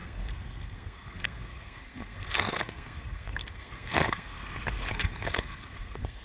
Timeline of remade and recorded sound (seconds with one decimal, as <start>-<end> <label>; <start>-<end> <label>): 0.0-4.4 remade; 4.4-4.9 recorded; 4.9-6.2 remade